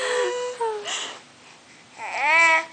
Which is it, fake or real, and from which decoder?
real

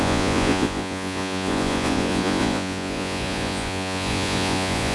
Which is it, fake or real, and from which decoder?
fake, vocoder, Vocos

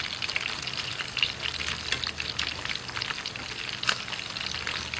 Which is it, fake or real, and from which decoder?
real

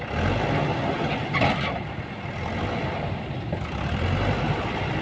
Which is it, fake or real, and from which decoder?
real